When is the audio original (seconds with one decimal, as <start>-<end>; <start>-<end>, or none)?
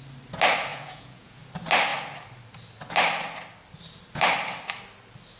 0.0-0.7; 1.4-5.4